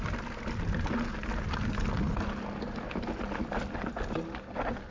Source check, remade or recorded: recorded